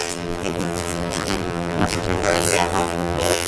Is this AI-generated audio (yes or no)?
yes